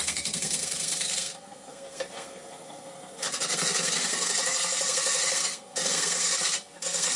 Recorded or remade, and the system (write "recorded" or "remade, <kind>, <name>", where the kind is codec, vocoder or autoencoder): remade, codec, SNAC